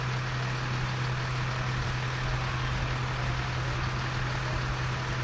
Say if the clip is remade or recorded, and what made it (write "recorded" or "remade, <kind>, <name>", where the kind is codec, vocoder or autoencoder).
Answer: recorded